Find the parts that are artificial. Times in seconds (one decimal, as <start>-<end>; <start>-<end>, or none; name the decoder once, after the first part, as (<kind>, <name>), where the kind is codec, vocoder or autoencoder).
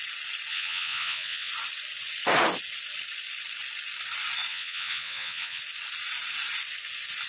0.5-1.5 (vocoder, Vocos); 4.5-5.6